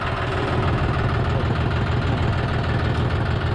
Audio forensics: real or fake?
real